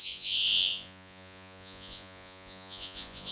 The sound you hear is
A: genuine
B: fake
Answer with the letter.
B